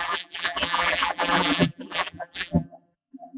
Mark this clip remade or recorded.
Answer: remade